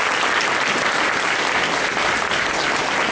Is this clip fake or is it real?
real